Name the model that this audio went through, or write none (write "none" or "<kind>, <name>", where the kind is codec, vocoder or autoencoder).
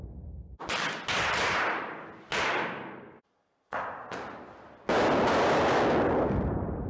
none